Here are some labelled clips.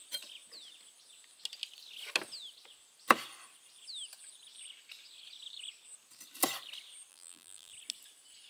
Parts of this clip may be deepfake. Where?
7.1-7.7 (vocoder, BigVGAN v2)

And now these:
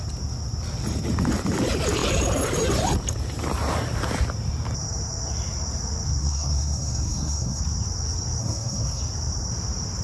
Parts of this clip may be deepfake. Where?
6.2-7.6 (codec, SNAC); 8.4-9.0

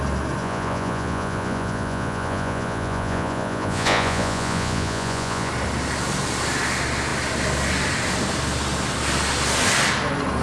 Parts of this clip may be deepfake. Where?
0.4-5.5 (vocoder, Vocos)

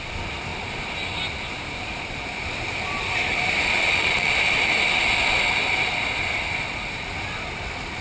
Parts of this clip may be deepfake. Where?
3.7-4.3 (vocoder, Vocos)

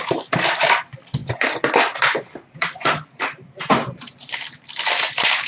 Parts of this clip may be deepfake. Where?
none